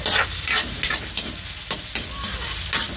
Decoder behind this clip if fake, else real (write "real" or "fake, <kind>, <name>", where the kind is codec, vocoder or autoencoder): real